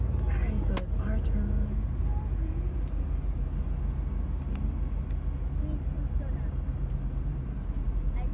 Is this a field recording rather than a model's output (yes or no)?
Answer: yes